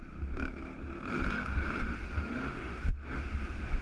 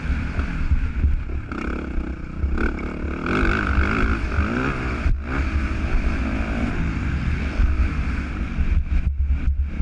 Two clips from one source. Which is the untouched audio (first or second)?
second